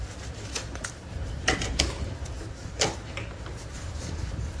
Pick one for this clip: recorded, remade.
remade